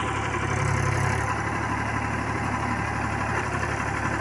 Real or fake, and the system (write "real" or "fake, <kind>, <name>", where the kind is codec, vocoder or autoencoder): fake, vocoder, BigVGAN v2